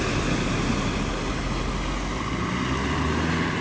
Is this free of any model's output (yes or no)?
yes